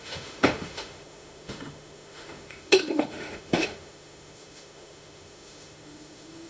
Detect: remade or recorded remade